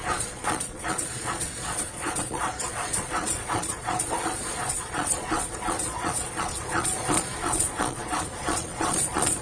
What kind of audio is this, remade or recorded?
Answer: remade